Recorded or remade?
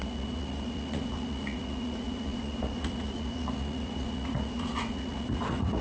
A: remade